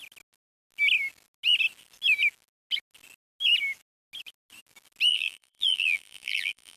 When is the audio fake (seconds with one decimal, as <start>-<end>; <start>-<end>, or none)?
5.1-6.8